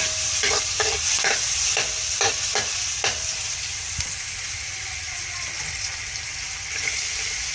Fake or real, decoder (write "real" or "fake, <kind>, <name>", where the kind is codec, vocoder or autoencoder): fake, vocoder, BigVGAN v2